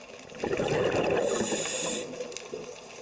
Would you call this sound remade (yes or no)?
no